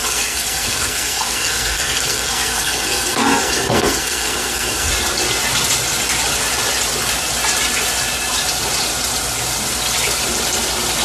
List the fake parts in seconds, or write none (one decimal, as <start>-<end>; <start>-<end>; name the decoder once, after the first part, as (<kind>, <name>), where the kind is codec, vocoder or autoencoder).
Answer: 0.0-4.9 (codec, SNAC)

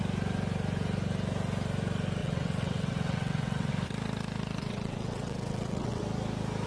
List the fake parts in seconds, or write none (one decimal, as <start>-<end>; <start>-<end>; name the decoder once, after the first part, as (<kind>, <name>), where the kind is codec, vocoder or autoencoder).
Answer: 2.2-3.7 (vocoder, WaveNeXt); 4.6-6.0

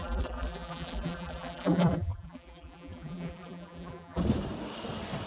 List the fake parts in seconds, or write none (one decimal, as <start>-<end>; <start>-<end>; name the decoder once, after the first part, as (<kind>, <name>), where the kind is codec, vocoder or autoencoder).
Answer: 0.0-4.2 (vocoder, BigVGAN v2)